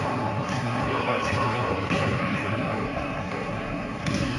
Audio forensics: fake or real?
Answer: fake